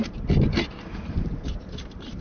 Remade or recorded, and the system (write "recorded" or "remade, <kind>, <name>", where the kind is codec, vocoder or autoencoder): remade, vocoder, BigVGAN v2